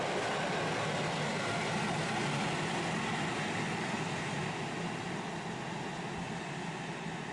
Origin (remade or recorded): recorded